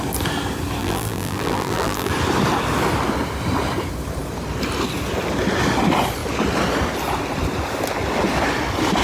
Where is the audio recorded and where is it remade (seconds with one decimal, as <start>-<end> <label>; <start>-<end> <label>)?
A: 0.0-0.8 recorded; 0.8-2.1 remade; 2.1-9.0 recorded